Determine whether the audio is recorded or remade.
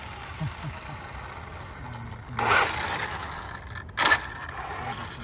recorded